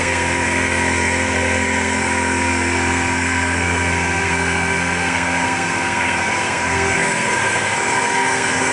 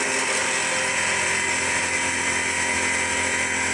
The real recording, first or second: second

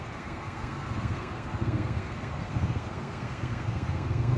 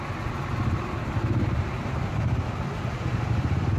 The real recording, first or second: second